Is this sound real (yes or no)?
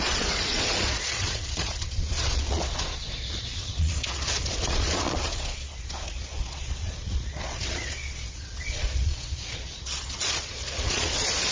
no